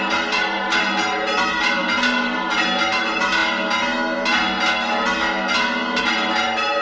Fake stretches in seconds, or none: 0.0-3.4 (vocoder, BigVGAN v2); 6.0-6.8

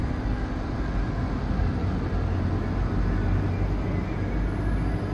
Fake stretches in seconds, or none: none

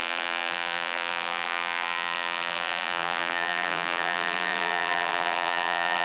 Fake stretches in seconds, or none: 0.0-6.0 (vocoder, BigVGAN v2)

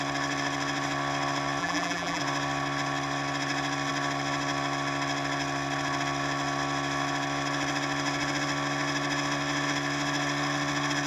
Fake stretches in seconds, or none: 1.6-2.2 (vocoder, BigVGAN v2)

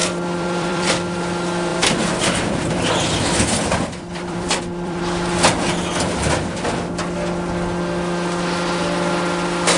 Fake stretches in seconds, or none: 0.0-0.9 (vocoder, BigVGAN v2); 1.7-5.0

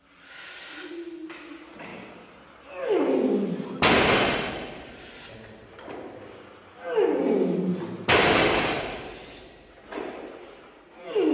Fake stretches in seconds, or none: 1.9-3.5 (vocoder, BigVGAN v2); 8.0-9.0

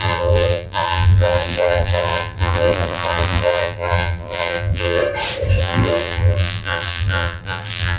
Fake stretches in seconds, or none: 0.0-5.0 (vocoder, BigVGAN v2); 5.6-8.0

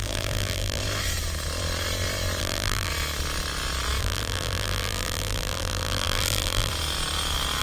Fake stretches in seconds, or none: 0.0-0.8 (vocoder, BigVGAN v2); 2.4-2.9; 4.0-6.7